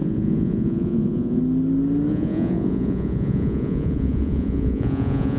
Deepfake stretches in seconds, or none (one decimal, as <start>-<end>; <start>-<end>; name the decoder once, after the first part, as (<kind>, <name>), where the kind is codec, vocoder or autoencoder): 0.0-1.4 (vocoder, Vocos); 2.1-5.4